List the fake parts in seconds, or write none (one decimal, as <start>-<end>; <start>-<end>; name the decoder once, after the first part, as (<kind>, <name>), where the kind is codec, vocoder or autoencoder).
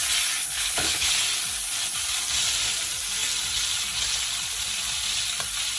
0.4-1.1 (codec, HILCodec)